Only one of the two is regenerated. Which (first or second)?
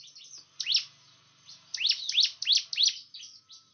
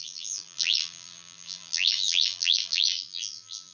second